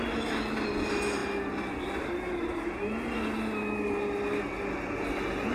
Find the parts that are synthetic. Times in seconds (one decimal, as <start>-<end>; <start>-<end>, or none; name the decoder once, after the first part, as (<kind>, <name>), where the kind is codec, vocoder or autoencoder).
none